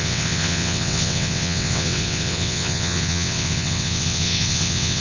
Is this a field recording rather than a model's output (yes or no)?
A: no